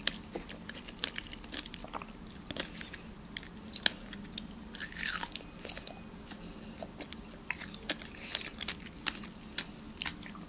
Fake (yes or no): no